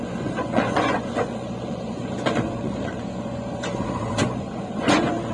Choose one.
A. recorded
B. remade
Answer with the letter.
B